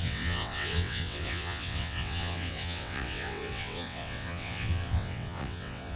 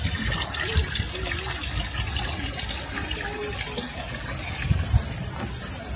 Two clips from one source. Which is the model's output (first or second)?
first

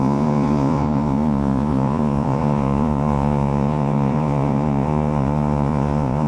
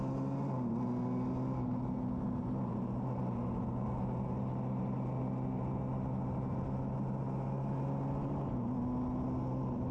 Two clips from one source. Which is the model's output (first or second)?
first